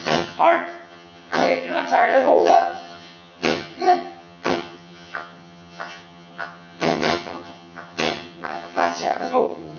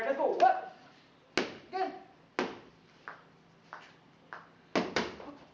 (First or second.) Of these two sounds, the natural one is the second